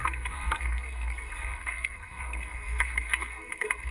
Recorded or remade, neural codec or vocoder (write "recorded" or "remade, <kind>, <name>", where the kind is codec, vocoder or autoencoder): remade, codec, SNAC